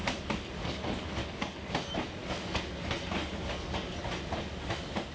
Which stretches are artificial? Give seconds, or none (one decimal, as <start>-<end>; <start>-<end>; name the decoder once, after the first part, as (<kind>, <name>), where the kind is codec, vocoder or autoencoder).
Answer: 0.0-1.7 (codec, DAC); 2.2-2.7; 3.2-3.9